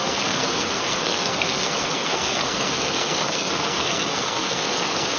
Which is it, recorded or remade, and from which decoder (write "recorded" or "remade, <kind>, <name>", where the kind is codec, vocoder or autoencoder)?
remade, codec, SNAC